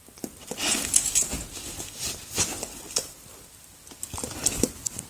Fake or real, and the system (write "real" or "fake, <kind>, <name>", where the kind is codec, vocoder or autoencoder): real